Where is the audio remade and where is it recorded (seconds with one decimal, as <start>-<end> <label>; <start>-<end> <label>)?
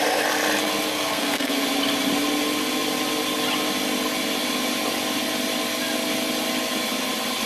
0.0-0.9 recorded; 0.9-1.6 remade; 1.6-7.5 recorded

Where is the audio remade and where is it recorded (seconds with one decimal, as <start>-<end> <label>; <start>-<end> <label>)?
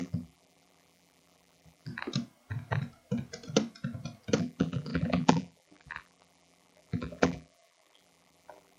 0.0-1.9 remade; 1.9-4.4 recorded; 4.4-8.8 remade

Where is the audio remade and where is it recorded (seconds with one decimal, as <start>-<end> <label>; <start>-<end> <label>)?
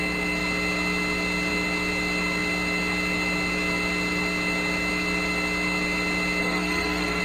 0.0-6.4 recorded; 6.4-7.2 remade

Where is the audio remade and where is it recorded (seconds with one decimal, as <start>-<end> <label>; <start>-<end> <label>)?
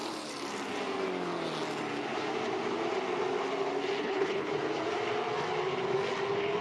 0.0-4.0 recorded; 4.0-4.5 remade; 4.5-6.6 recorded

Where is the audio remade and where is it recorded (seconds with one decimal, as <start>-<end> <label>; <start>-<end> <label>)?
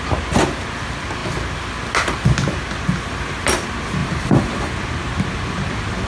0.0-4.0 recorded; 4.0-4.7 remade; 4.7-6.1 recorded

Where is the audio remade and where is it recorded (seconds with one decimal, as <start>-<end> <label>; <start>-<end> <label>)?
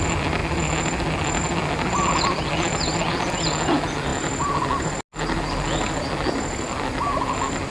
0.0-7.7 recorded